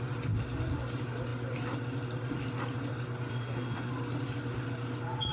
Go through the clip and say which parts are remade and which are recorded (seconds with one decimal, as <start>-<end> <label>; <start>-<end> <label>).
0.0-3.3 recorded; 3.3-3.9 remade; 3.9-5.3 recorded